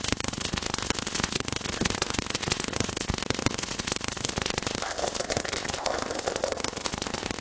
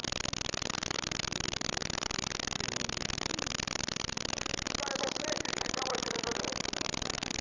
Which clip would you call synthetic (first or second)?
first